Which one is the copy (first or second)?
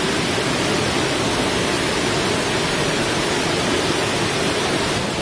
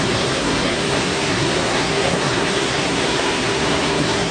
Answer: second